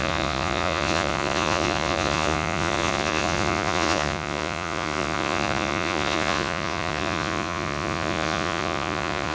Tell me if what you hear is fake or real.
fake